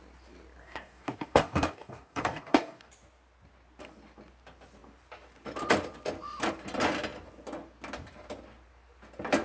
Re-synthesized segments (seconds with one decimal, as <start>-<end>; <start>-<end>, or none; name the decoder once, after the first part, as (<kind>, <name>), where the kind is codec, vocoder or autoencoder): 0.6-2.9 (codec, DAC)